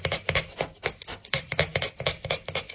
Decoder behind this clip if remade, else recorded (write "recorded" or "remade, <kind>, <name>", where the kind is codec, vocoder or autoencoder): recorded